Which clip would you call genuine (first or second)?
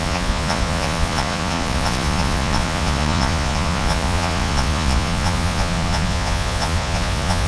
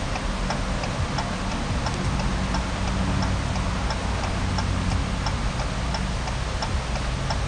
second